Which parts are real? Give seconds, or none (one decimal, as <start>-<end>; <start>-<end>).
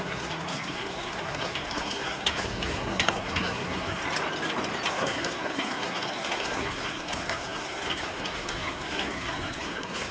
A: 4.0-4.9